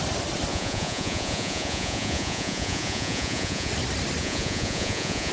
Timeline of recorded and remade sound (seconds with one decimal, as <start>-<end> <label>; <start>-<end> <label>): 0.0-0.5 recorded; 0.5-3.7 remade; 3.7-4.2 recorded; 4.2-5.3 remade